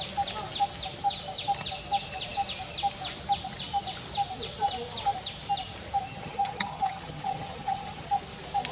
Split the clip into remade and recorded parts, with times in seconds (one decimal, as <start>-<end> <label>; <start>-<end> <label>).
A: 0.0-6.1 recorded; 6.1-8.1 remade; 8.1-8.7 recorded